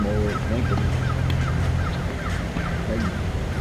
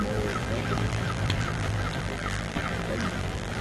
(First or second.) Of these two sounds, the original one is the first